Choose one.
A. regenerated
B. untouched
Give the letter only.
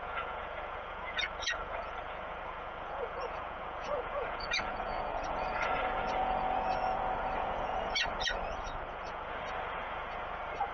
A